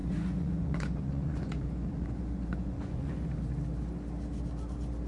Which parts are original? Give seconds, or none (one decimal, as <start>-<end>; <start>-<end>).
3.1-5.1